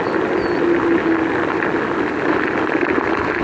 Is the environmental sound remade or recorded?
recorded